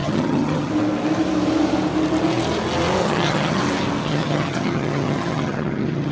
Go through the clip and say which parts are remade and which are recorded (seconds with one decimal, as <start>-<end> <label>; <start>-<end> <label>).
0.0-0.7 remade; 0.7-3.0 recorded; 3.0-3.6 remade; 3.6-4.0 recorded; 4.0-6.1 remade